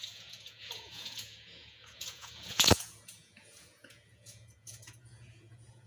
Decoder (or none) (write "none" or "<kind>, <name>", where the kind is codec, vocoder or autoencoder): vocoder, Vocos